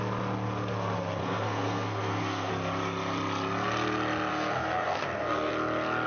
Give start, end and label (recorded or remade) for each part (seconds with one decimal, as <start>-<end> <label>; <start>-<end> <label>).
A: 0.0-1.2 recorded; 1.2-2.5 remade; 2.5-4.3 recorded; 4.3-5.5 remade; 5.5-6.1 recorded